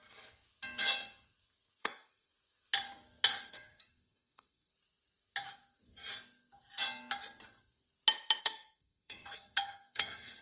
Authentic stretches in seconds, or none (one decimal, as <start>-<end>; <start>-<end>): 0.0-1.8; 2.3-3.5; 4.7-8.4